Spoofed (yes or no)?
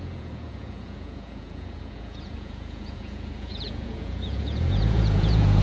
yes